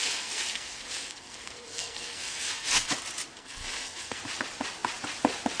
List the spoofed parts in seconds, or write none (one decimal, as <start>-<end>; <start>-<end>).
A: 0.0-2.9; 3.3-4.2